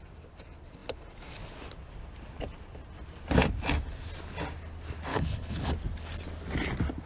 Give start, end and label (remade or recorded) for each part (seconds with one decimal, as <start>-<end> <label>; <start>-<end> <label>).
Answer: 0.0-5.1 recorded; 5.1-5.7 remade; 5.7-7.1 recorded